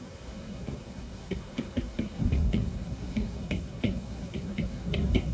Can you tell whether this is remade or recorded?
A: remade